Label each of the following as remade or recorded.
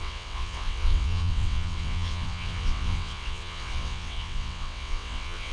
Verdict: remade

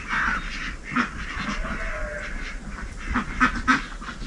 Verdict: recorded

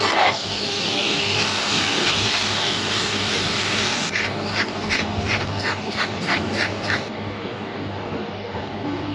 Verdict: remade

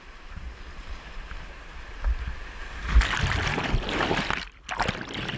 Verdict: remade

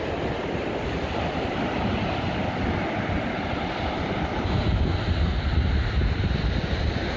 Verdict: recorded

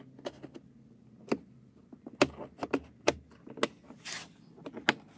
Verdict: recorded